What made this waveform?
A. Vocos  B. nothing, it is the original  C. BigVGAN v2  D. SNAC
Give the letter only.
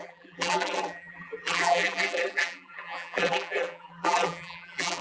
C